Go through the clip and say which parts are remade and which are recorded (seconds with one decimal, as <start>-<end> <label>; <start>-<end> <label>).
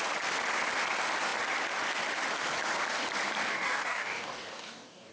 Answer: 0.0-3.5 recorded; 3.5-5.1 remade